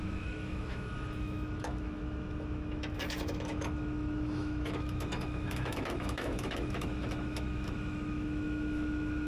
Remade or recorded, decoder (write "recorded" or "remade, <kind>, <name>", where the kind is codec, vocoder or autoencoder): remade, autoencoder, DAC-VAE